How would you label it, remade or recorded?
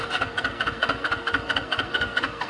remade